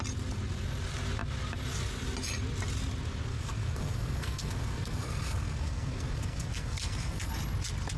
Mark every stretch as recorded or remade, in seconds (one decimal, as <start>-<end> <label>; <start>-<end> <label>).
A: 0.0-3.3 recorded; 3.3-7.3 remade; 7.3-8.0 recorded